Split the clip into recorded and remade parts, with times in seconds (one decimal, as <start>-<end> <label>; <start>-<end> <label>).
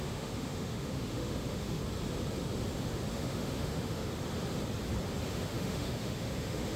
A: 0.0-1.8 remade; 1.8-3.2 recorded; 3.2-4.1 remade; 4.1-5.3 recorded; 5.3-6.8 remade